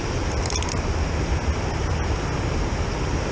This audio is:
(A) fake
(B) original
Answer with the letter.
B